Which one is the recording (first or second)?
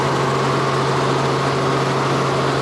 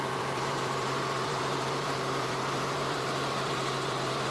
first